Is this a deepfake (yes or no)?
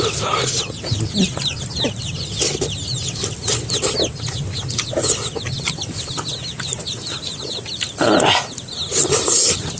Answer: no